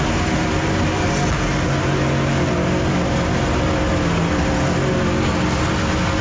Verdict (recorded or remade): recorded